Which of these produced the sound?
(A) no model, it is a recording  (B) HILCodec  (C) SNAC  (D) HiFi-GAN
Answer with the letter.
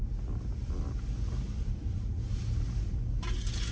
A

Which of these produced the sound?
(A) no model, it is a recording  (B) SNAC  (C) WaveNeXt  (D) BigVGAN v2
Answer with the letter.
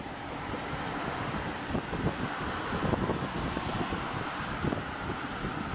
D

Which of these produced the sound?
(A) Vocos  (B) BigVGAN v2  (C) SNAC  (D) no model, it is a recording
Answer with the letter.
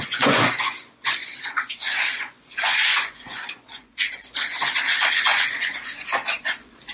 A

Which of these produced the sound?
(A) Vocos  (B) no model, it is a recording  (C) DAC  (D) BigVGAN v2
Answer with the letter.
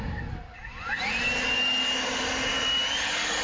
B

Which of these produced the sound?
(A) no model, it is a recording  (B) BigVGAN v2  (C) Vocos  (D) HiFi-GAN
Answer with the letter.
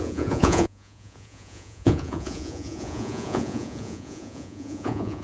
C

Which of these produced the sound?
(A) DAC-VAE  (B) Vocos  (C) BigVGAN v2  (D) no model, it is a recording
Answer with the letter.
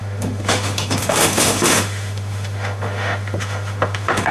A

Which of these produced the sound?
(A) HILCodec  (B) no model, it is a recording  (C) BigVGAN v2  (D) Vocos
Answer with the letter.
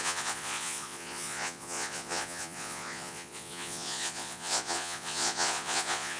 D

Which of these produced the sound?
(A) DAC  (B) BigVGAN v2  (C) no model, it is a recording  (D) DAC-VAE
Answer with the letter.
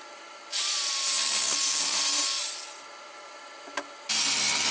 C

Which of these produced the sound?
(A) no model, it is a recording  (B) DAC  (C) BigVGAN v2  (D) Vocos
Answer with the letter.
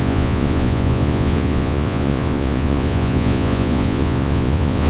D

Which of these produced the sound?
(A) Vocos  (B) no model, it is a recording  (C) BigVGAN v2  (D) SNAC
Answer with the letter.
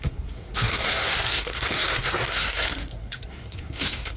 D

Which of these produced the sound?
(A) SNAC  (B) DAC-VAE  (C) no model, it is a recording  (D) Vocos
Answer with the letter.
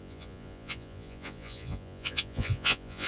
D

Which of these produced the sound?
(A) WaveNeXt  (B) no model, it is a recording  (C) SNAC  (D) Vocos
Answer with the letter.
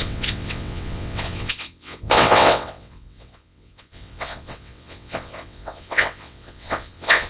A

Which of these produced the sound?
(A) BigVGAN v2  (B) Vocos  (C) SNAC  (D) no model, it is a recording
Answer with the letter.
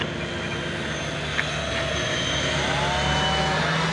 D